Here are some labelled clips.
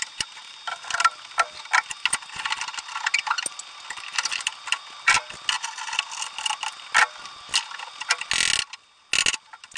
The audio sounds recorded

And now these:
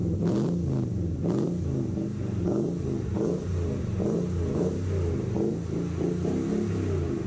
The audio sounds recorded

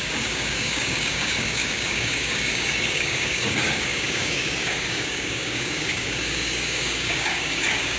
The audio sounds remade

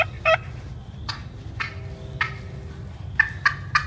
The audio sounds recorded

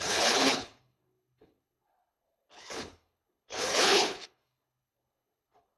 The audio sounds remade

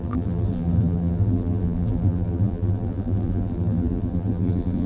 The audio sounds remade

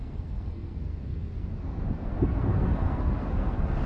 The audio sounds remade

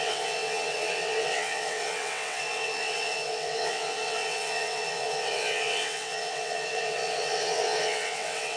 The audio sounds remade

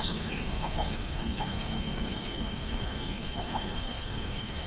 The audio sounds remade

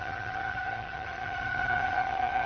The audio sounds remade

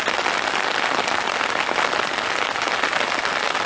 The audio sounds recorded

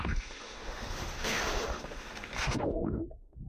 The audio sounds remade